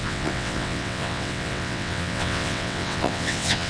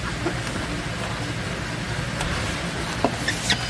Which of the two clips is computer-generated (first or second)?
first